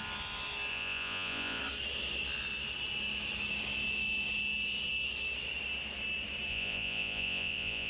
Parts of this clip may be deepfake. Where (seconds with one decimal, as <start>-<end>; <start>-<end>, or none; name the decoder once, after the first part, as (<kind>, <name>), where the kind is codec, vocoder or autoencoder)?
0.7-1.6 (vocoder, Vocos); 6.5-7.9